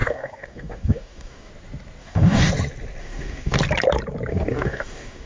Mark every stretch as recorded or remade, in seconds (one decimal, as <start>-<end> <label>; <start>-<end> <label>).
0.0-1.5 remade; 1.5-2.0 recorded; 2.0-2.5 remade; 2.5-3.0 recorded; 3.0-3.6 remade; 3.6-4.3 recorded; 4.3-5.3 remade